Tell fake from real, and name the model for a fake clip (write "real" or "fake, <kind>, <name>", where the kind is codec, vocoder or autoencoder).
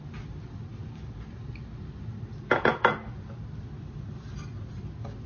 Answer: real